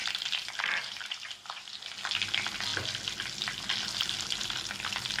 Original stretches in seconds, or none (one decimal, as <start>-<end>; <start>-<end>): 1.8-5.2